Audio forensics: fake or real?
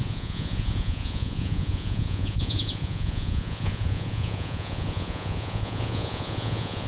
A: fake